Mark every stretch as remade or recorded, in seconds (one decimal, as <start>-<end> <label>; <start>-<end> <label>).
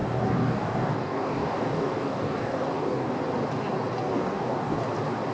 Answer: 0.0-3.2 remade; 3.2-4.1 recorded; 4.1-4.8 remade; 4.8-5.3 recorded